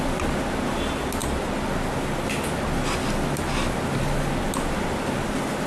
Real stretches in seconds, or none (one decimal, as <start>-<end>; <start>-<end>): 0.0-5.7